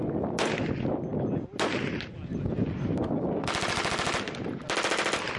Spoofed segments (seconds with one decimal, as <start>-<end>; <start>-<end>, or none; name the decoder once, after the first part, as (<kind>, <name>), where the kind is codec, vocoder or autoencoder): none